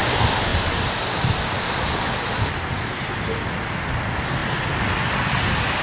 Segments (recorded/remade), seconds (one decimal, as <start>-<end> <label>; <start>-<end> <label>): 0.0-0.5 recorded; 0.5-4.0 remade; 4.0-5.8 recorded